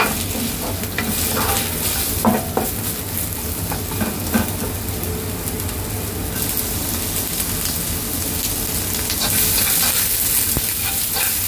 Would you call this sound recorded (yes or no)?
yes